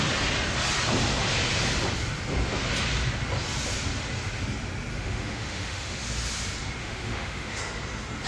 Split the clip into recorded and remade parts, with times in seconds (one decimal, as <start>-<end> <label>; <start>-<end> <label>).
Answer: 0.0-4.9 recorded; 4.9-6.0 remade; 6.0-6.8 recorded; 6.8-7.6 remade; 7.6-8.3 recorded